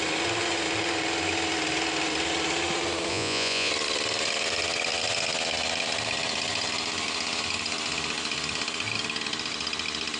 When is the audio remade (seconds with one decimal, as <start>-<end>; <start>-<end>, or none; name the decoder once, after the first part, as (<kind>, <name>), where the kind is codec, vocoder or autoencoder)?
3.1-3.7 (vocoder, Vocos)